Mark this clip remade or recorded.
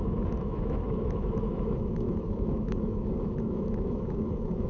remade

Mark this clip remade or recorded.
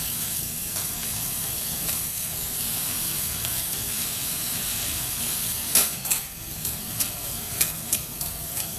remade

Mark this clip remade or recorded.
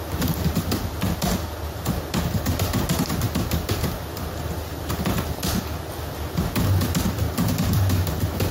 recorded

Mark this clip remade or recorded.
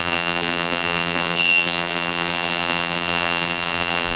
remade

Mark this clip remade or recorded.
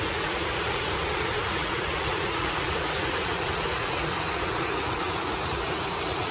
remade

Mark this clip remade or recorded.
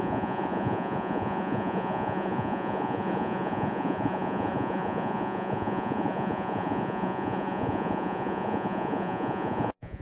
remade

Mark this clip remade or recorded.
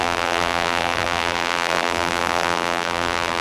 remade